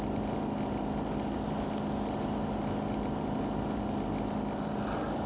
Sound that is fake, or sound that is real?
real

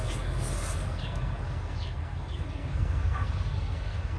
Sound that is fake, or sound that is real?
fake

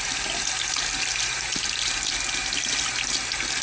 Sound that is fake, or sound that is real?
real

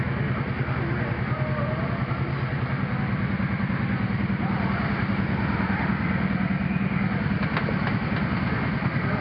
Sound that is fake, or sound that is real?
real